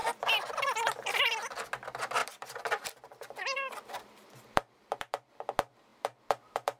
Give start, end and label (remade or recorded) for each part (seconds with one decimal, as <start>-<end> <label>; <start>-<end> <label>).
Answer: 0.0-1.3 remade; 1.3-2.2 recorded; 2.2-5.3 remade; 5.3-5.9 recorded; 5.9-6.8 remade